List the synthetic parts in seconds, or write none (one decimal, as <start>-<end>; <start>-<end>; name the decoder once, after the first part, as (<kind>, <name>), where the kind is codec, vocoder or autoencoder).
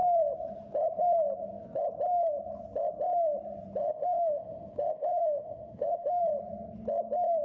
3.8-6.2 (autoencoder, DAC-VAE)